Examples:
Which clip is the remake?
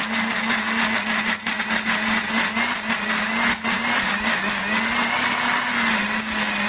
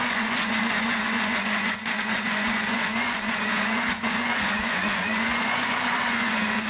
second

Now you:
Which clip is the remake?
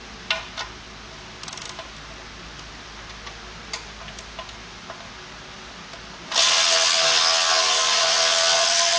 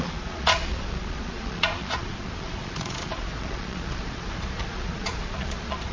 second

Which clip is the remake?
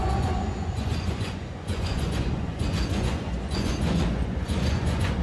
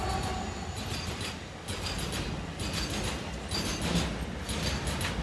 first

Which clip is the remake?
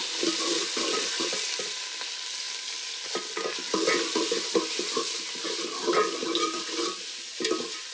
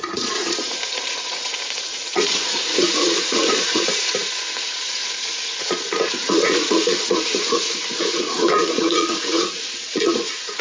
second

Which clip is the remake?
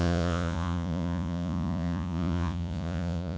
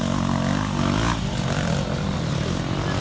first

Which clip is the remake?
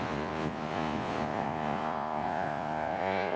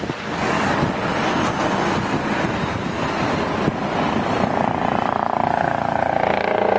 first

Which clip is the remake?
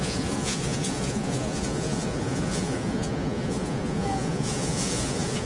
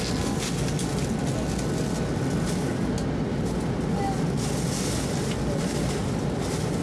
first